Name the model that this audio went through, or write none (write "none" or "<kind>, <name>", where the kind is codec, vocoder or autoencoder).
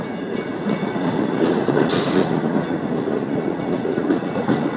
vocoder, Vocos